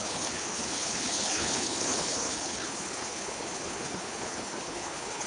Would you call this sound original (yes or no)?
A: no